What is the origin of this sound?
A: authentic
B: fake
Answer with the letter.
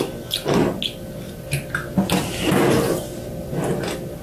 A